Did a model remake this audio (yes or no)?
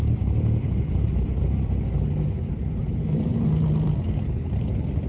yes